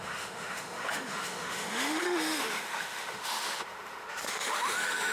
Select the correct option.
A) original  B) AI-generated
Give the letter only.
B